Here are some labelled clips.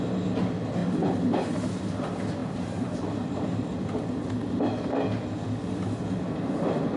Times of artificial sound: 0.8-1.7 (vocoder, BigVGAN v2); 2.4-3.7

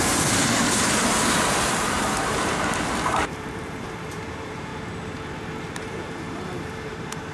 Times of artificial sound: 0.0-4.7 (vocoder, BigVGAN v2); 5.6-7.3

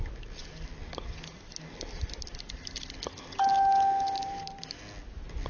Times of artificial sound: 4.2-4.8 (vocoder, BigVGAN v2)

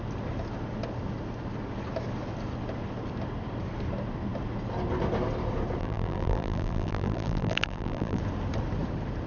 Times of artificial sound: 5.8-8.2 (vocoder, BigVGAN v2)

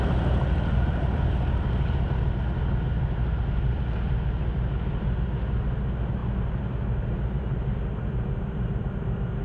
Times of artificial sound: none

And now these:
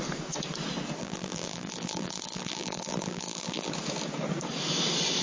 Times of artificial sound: 1.0-3.7 (vocoder, BigVGAN v2)

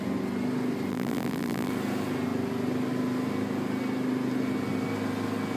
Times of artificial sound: 0.9-1.7 (vocoder, BigVGAN v2)

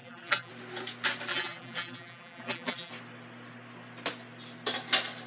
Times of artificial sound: 0.0-0.5 (vocoder, BigVGAN v2); 1.3-2.9